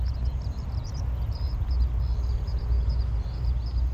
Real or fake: real